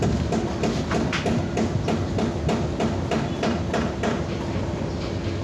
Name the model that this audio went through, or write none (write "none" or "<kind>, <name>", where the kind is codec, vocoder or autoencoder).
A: none